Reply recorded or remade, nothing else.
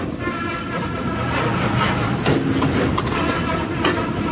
recorded